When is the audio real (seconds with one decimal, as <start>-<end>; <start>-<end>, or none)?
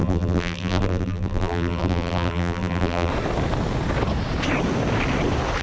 3.1-5.6